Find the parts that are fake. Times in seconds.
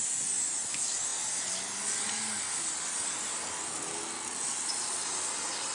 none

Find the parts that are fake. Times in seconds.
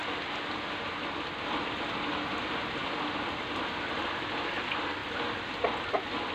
2.1-6.3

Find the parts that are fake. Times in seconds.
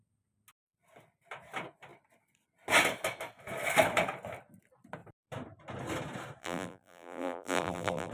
6.4-8.1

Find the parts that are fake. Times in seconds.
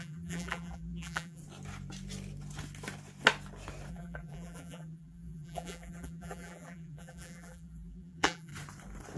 0.0-1.4; 3.9-8.5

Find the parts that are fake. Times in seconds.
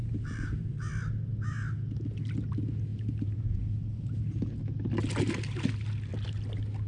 0.0-0.6; 2.9-4.1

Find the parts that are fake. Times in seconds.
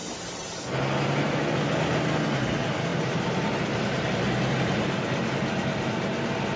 0.0-0.6; 2.9-5.4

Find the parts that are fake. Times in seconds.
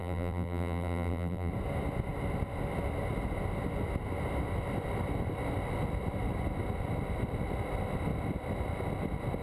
0.0-1.5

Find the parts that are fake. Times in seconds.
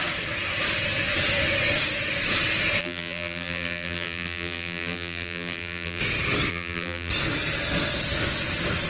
2.8-6.0; 6.5-7.1